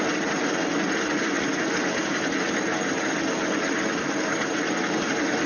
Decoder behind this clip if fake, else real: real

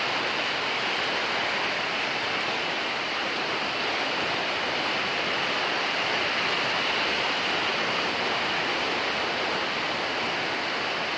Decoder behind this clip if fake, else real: real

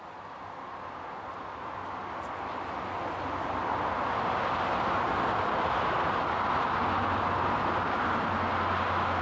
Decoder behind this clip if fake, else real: real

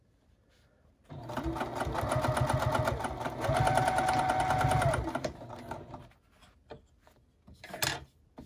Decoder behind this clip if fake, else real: real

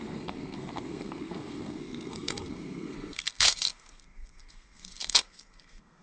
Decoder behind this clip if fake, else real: fake, codec, SNAC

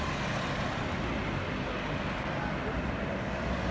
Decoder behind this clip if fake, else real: real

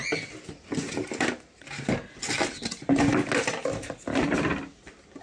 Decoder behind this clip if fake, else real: real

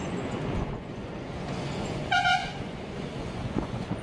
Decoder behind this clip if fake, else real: fake, vocoder, Vocos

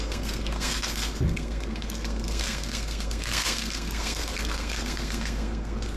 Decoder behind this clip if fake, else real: fake, codec, SNAC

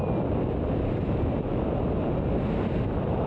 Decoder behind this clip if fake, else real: real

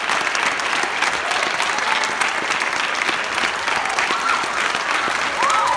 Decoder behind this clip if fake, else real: real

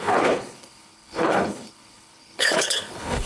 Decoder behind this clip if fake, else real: fake, codec, HILCodec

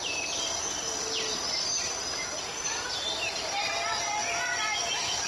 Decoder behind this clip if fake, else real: real